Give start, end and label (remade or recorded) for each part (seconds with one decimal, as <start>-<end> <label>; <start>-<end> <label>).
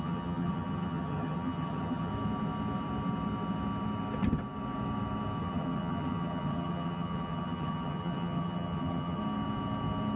0.0-2.1 remade; 2.1-5.4 recorded; 5.4-9.2 remade; 9.2-10.2 recorded